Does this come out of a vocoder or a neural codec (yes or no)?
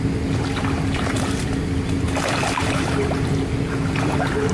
no